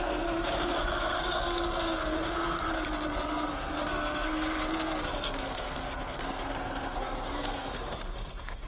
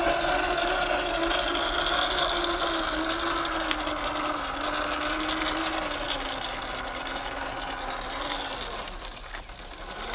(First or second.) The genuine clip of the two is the second